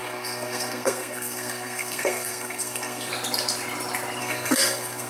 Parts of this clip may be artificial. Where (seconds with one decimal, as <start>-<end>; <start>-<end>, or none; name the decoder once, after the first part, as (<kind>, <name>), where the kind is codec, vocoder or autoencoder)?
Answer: 0.0-3.1 (codec, SNAC); 4.2-5.1

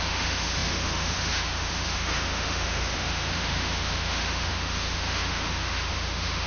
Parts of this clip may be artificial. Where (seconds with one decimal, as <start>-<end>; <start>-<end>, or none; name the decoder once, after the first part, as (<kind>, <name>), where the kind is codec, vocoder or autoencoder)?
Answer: 0.0-6.5 (autoencoder, DAC-VAE)